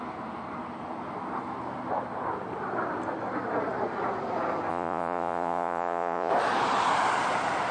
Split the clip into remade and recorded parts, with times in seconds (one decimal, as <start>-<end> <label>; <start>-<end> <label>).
0.0-4.7 recorded; 4.7-6.3 remade; 6.3-7.7 recorded

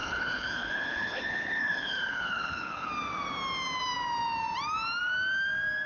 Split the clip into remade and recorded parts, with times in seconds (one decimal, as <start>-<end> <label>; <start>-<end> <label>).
0.0-2.9 remade; 2.9-5.9 recorded

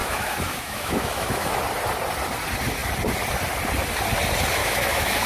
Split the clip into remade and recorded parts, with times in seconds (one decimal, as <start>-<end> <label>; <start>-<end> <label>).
0.0-1.6 remade; 1.6-4.6 recorded; 4.6-5.3 remade

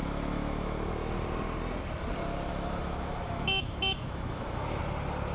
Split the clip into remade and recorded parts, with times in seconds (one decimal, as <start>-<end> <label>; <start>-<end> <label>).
0.0-0.9 remade; 0.9-2.5 recorded; 2.5-4.8 remade; 4.8-5.3 recorded